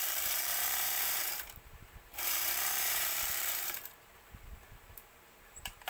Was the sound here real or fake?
fake